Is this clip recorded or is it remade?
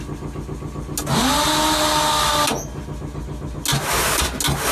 recorded